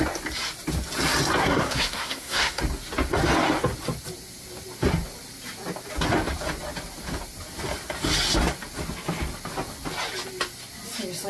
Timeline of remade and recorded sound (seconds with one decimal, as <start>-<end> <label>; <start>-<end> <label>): 0.0-1.4 recorded; 1.4-2.6 remade; 2.6-11.3 recorded